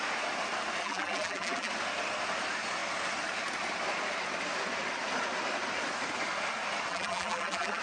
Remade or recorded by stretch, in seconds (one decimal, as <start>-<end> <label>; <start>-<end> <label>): 0.0-0.8 recorded; 0.8-1.7 remade; 1.7-6.9 recorded; 6.9-7.8 remade